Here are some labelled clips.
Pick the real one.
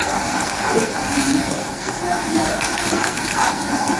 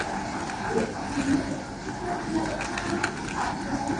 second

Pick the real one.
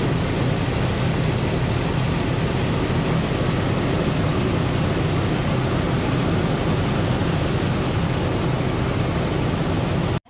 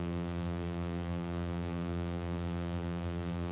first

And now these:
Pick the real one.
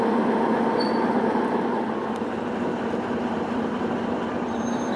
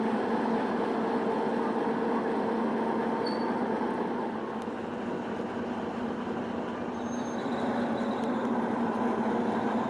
second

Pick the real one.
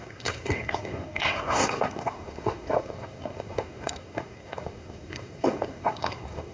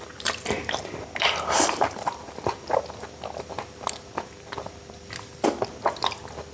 second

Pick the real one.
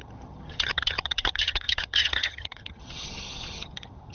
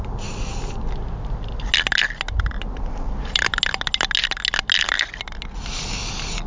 second